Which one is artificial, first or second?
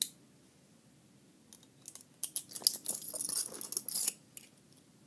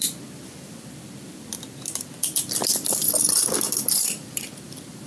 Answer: second